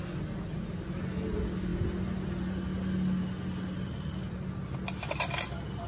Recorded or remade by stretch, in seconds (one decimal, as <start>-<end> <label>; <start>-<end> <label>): 0.0-5.9 recorded